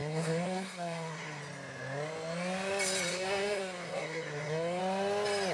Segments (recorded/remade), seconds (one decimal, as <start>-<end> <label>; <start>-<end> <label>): 0.0-1.4 remade; 1.4-3.1 recorded; 3.1-4.8 remade; 4.8-5.5 recorded